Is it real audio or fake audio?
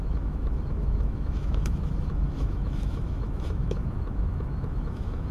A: fake